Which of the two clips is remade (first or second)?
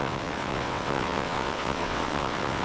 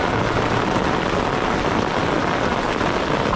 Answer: first